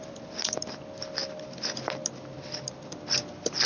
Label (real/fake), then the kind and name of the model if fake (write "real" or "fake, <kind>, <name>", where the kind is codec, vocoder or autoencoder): real